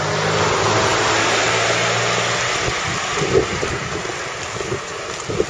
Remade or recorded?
recorded